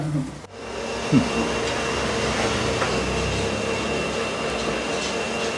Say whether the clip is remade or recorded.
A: recorded